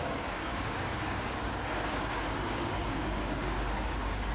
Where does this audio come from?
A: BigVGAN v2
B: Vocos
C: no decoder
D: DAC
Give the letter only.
D